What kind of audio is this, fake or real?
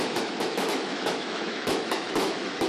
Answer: fake